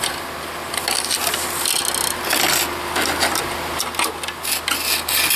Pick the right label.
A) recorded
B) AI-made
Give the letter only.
A